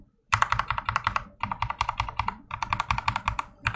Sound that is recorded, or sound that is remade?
remade